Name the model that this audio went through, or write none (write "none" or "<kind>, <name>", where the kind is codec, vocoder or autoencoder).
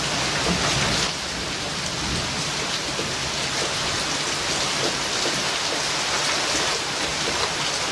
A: none